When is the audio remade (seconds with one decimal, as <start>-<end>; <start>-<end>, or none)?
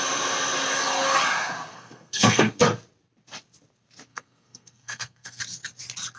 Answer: 1.7-2.6; 4.1-5.4